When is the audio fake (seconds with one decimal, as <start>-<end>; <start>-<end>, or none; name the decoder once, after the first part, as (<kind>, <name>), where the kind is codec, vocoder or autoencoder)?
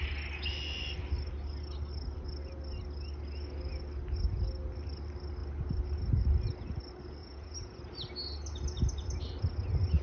7.2-7.8 (vocoder, Vocos)